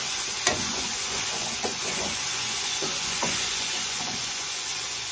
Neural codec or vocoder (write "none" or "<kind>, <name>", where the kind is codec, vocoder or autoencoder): vocoder, Vocos